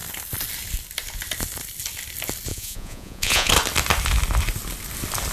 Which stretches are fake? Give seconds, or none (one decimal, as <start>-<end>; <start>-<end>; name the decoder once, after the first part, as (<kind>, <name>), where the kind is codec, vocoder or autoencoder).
2.5-3.5 (vocoder, Vocos)